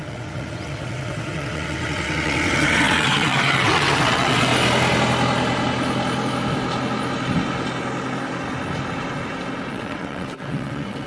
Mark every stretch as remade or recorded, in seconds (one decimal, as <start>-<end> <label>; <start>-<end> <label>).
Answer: 0.0-4.5 remade; 4.5-9.7 recorded; 9.7-11.1 remade